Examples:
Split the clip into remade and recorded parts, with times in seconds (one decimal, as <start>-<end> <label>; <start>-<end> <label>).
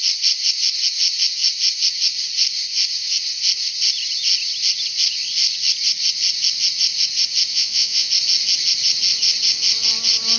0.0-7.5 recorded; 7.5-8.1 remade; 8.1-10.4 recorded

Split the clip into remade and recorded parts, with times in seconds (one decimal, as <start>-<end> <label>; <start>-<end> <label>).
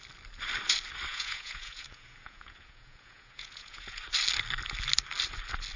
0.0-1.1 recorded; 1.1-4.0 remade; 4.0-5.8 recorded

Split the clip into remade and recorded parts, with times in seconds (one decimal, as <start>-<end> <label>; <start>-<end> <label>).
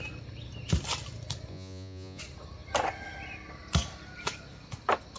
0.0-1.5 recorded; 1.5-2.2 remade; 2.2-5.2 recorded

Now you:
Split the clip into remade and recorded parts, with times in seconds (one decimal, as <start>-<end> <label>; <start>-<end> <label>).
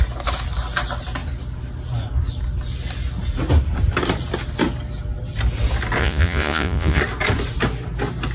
0.0-6.0 recorded; 6.0-7.0 remade; 7.0-8.3 recorded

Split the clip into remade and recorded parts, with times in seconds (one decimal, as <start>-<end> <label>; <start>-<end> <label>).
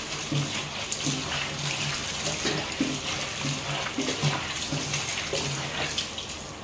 0.0-6.6 recorded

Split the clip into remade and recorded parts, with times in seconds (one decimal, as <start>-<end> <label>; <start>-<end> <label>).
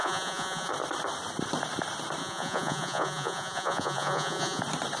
0.0-0.7 remade; 0.7-2.2 recorded; 2.2-4.6 remade; 4.6-5.0 recorded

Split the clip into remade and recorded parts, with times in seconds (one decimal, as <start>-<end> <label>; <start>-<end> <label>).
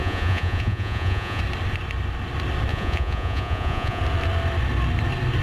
0.0-1.4 remade; 1.4-2.7 recorded; 2.7-4.0 remade; 4.0-5.4 recorded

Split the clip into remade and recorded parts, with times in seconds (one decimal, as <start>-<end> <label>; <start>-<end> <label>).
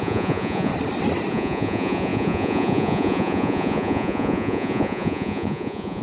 0.0-0.7 remade; 0.7-1.3 recorded; 1.3-6.0 remade